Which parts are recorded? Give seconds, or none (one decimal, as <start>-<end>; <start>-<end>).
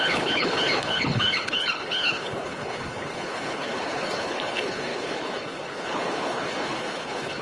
none